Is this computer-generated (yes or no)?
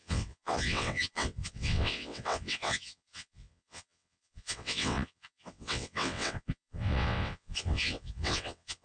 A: yes